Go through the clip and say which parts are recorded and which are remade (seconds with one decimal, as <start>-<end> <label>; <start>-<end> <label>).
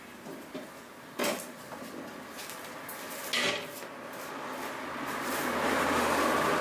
0.0-6.6 recorded